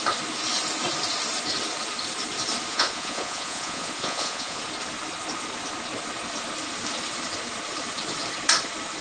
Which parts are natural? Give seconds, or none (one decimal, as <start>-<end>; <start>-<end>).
0.0-2.7; 4.6-9.0